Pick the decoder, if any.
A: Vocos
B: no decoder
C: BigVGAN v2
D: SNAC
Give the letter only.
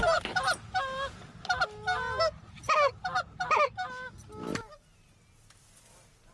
B